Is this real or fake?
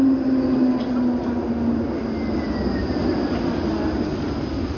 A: real